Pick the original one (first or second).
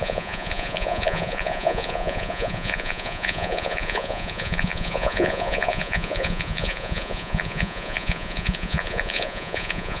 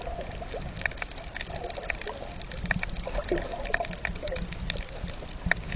second